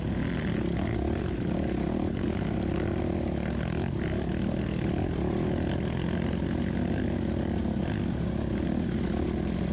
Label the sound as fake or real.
real